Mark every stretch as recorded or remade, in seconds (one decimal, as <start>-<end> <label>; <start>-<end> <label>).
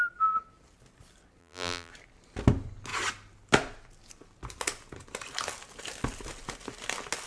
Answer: 0.0-1.4 recorded; 1.4-1.9 remade; 1.9-7.3 recorded